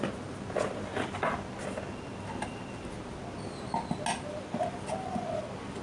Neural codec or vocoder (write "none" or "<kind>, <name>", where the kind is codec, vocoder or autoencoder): none